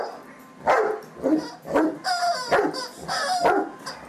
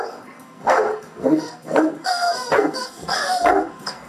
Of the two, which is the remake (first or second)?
second